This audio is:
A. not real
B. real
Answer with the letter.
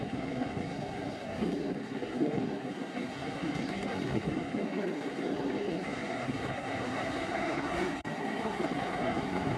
A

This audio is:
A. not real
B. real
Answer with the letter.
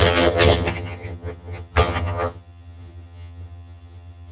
A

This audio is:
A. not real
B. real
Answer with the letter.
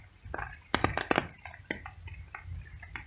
B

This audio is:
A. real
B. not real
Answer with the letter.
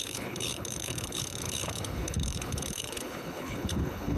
B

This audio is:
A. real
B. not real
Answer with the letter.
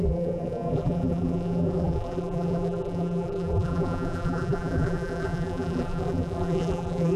B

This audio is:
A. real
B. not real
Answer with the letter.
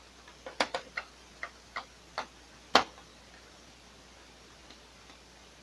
A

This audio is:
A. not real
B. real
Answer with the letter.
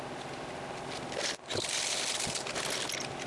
B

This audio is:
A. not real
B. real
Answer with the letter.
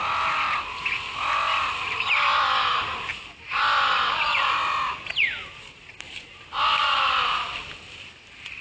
B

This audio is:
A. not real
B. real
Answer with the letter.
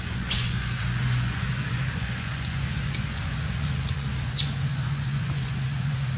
A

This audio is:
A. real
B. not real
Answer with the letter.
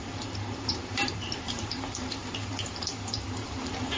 B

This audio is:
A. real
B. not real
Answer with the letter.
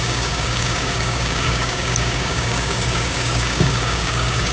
B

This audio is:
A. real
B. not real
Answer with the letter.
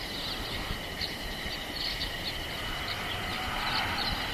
A